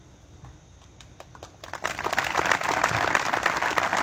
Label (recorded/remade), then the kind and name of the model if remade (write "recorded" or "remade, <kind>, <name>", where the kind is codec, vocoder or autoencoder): recorded